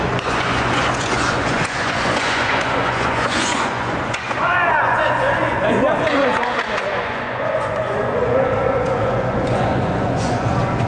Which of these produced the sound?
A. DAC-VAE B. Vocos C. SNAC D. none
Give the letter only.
B